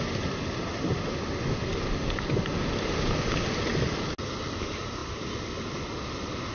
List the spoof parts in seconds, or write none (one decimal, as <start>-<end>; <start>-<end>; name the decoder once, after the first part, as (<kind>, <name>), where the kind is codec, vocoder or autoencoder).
none